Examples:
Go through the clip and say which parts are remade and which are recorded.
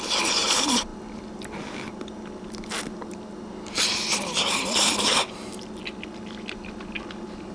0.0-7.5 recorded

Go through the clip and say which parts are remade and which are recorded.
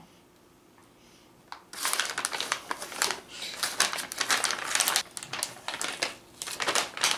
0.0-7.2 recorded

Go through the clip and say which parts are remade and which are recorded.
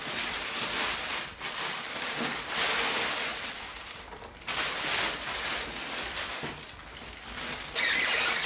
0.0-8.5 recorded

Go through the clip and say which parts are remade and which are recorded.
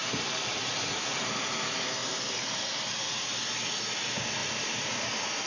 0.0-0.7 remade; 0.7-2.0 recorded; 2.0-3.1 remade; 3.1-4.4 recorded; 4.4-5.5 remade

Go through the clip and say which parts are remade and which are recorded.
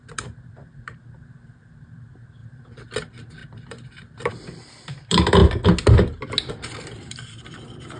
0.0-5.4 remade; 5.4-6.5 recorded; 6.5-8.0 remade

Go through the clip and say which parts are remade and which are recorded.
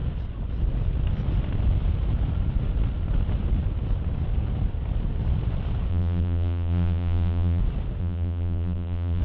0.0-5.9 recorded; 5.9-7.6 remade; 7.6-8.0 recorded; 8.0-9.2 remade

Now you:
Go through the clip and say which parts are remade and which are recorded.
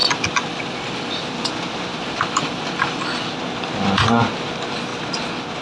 0.0-1.2 remade; 1.2-1.9 recorded; 1.9-3.3 remade; 3.3-5.6 recorded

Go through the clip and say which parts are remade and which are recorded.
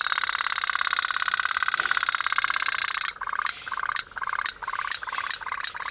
0.0-5.9 recorded